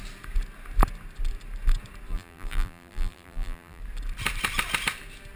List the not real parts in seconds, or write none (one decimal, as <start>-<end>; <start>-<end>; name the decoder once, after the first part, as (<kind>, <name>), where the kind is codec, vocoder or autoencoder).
2.1-3.8 (vocoder, BigVGAN v2)